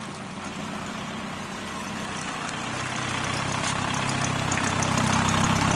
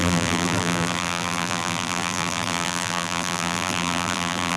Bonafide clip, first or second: first